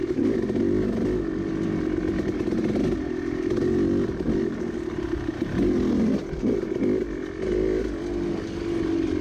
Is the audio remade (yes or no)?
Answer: no